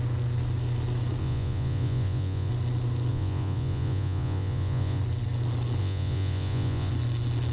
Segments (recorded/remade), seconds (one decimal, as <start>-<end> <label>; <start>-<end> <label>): 0.0-1.2 recorded; 1.2-2.5 remade; 2.5-3.1 recorded; 3.1-5.0 remade; 5.0-5.8 recorded; 5.8-6.9 remade; 6.9-7.5 recorded